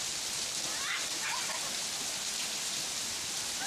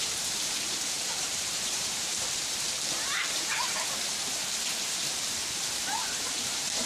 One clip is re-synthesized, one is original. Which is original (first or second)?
first